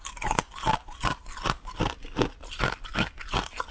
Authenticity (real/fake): real